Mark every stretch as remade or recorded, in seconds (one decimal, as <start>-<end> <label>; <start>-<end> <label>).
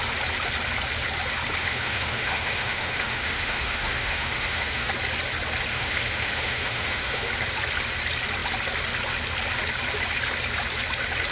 0.0-1.6 recorded; 1.6-4.9 remade; 4.9-5.7 recorded; 5.7-7.3 remade; 7.3-11.3 recorded